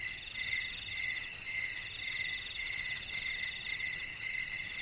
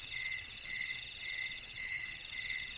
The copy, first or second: second